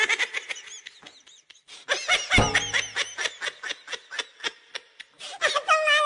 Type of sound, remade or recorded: recorded